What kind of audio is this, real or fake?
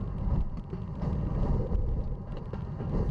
real